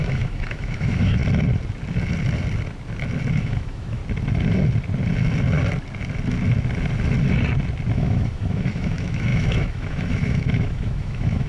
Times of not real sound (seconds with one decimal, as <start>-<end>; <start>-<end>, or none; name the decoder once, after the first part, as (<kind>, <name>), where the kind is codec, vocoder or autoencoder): 0.0-1.2 (autoencoder, DAC-VAE); 3.3-4.0; 7.9-11.5